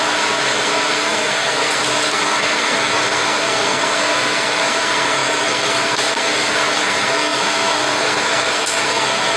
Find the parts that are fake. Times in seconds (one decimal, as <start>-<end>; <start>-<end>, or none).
0.0-9.4